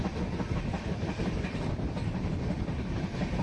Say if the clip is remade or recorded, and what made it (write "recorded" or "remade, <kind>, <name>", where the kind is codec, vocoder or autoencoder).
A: recorded